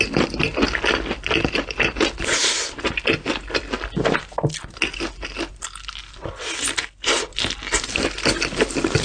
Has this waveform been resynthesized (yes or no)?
no